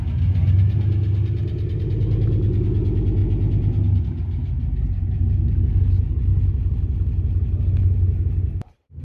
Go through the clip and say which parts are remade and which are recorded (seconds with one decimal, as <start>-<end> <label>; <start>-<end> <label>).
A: 0.0-9.0 recorded